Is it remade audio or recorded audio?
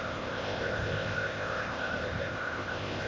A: remade